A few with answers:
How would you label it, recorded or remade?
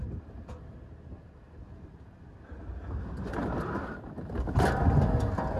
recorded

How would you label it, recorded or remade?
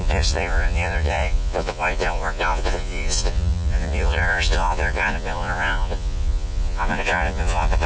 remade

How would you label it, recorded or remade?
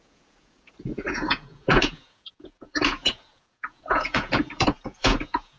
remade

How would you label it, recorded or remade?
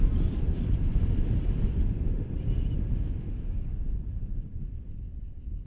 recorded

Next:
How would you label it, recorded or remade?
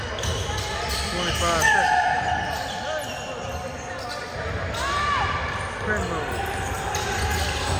recorded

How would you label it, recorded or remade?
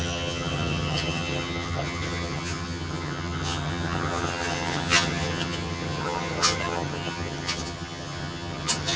remade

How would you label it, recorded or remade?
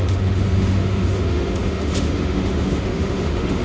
remade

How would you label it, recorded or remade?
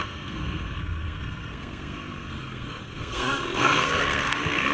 remade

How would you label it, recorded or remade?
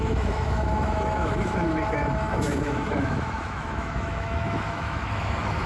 remade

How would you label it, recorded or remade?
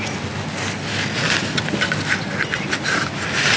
recorded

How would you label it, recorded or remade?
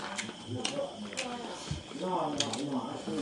recorded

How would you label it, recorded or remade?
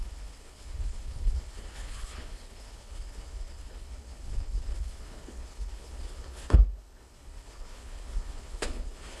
remade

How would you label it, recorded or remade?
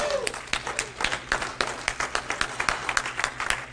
recorded